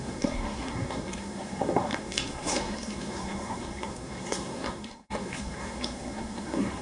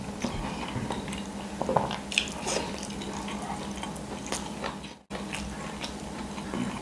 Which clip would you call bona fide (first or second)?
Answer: second